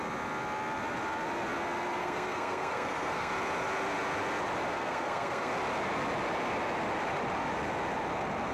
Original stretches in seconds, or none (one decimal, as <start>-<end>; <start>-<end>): 0.0-2.0; 3.3-4.7; 5.5-8.5